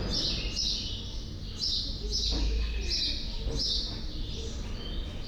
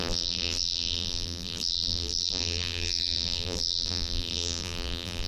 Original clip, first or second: first